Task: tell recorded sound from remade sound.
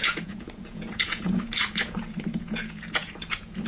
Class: remade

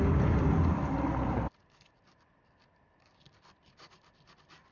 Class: recorded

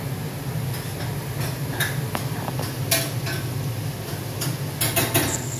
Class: recorded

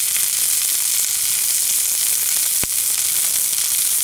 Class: recorded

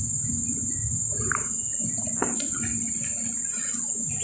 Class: recorded